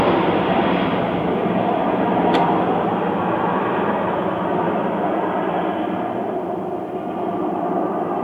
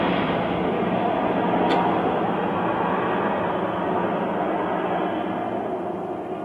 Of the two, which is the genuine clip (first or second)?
second